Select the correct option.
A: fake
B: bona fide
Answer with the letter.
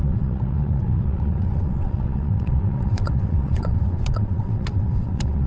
A